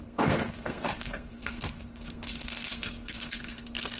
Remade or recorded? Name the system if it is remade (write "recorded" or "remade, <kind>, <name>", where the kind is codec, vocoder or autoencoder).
remade, codec, SNAC